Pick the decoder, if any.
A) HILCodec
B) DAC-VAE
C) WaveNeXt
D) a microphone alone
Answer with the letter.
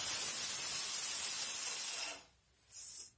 D